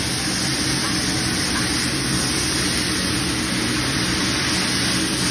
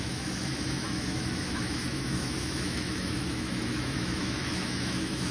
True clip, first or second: first